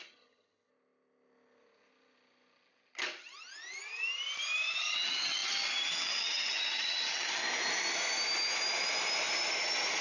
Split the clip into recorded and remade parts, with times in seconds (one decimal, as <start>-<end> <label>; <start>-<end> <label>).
0.0-0.7 remade; 0.7-4.8 recorded; 4.8-7.4 remade; 7.4-10.0 recorded